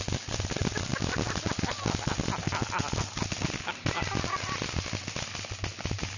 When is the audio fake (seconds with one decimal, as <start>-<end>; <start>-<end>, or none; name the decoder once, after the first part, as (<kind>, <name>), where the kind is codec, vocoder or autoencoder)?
none